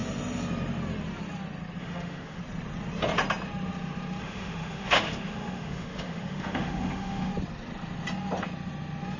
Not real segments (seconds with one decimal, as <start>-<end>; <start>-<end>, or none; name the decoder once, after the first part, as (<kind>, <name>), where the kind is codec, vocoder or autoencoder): 1.8-2.4 (autoencoder, DAC-VAE); 4.2-7.3